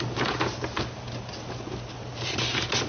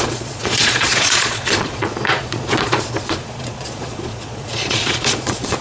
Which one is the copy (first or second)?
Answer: second